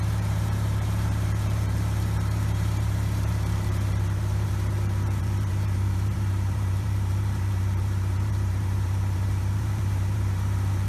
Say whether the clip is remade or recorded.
remade